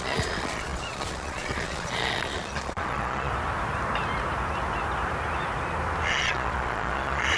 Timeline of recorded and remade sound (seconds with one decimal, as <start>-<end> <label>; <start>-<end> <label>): 0.0-3.3 remade; 3.3-6.1 recorded; 6.1-7.4 remade